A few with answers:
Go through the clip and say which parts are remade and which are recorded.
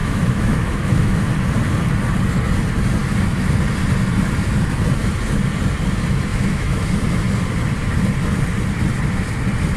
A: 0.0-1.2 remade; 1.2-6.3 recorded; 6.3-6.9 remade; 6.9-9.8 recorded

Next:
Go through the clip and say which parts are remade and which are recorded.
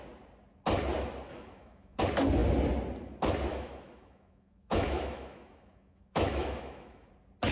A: 0.0-1.3 recorded; 1.3-2.0 remade; 2.0-3.5 recorded; 3.5-7.1 remade; 7.1-7.5 recorded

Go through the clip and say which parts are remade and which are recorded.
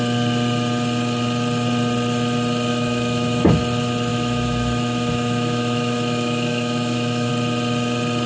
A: 0.0-2.7 recorded; 2.7-3.5 remade; 3.5-4.1 recorded; 4.1-7.3 remade; 7.3-8.3 recorded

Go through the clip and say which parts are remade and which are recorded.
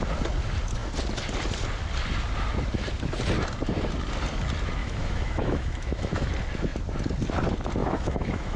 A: 0.0-4.8 recorded; 4.8-6.3 remade; 6.3-7.8 recorded; 7.8-8.6 remade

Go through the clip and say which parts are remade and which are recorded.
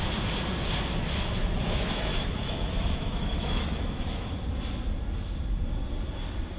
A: 0.0-1.4 recorded; 1.4-4.3 remade; 4.3-6.6 recorded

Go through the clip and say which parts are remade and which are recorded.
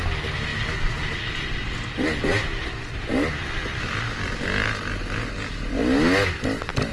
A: 0.0-6.9 recorded